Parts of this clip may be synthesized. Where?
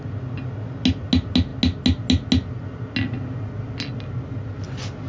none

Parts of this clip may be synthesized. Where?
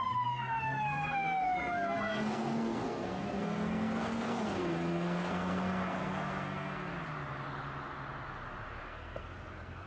0.0-6.9; 8.8-9.9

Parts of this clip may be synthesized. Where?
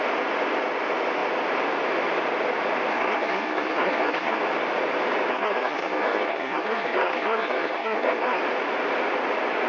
2.9-4.4; 5.3-8.4